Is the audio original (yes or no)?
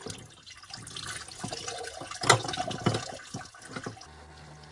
yes